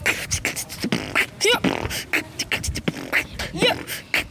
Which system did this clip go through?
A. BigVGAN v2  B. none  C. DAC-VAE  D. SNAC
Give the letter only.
B